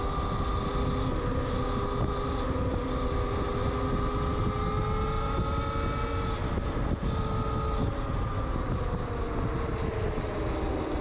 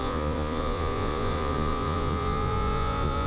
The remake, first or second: second